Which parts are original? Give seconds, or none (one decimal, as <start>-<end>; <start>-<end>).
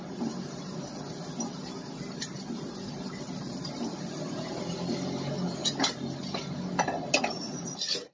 0.0-8.1